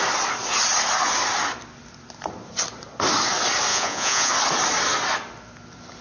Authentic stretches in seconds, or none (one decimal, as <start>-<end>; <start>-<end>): 0.0-3.7; 4.3-6.0